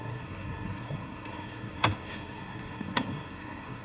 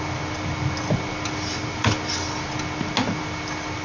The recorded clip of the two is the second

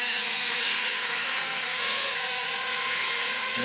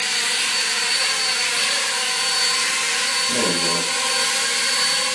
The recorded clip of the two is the second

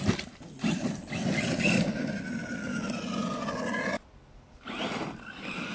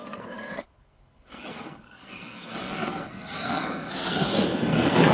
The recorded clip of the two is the first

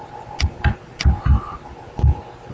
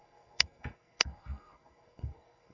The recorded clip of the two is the first